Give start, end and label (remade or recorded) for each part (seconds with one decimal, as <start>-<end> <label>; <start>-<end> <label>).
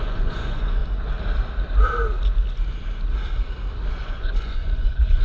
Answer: 0.0-0.8 remade; 0.8-3.9 recorded; 3.9-5.2 remade